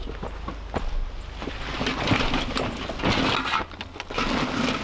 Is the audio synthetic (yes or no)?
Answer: no